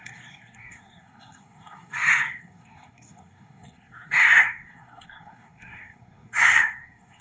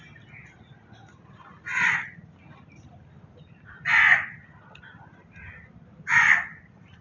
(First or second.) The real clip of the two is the second